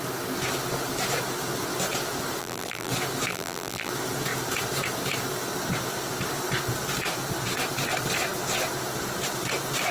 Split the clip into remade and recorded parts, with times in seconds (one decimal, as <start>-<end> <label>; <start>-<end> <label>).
0.0-2.4 recorded; 2.4-2.9 remade; 2.9-3.3 recorded; 3.3-3.9 remade; 3.9-9.9 recorded